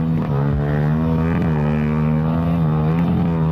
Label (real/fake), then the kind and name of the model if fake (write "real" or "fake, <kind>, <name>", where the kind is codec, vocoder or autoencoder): real